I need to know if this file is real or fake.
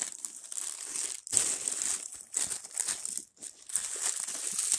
real